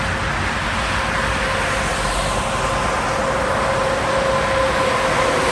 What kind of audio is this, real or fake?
real